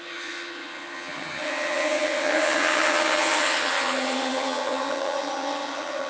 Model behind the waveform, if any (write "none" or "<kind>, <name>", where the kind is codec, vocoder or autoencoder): vocoder, HiFi-GAN